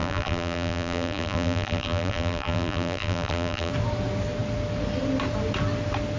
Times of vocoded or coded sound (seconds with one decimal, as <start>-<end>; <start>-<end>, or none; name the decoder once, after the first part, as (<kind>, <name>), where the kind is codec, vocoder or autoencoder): 0.0-3.7 (vocoder, BigVGAN v2)